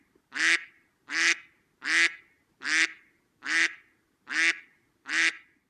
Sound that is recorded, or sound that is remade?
recorded